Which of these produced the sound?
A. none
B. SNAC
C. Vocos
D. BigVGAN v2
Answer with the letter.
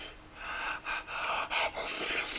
A